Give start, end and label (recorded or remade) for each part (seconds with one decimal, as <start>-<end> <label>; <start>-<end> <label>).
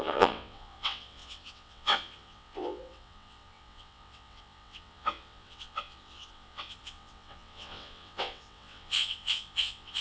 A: 0.0-10.0 remade